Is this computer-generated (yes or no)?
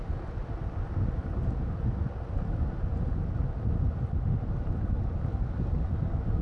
no